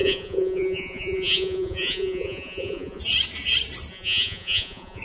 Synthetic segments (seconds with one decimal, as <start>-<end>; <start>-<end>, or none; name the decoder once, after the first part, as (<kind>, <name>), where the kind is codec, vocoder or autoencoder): 0.0-3.0 (vocoder, Vocos); 3.9-5.0